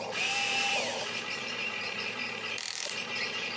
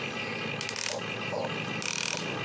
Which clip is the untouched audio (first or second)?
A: second